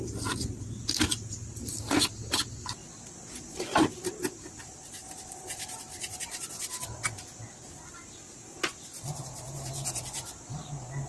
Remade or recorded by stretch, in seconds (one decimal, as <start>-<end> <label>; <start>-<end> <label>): 0.0-11.1 recorded